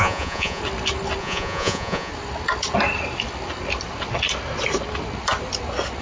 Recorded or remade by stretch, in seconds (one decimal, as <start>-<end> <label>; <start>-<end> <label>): 0.0-0.6 remade; 0.6-1.2 recorded; 1.2-2.1 remade; 2.1-6.0 recorded